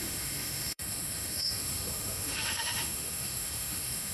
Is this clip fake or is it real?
fake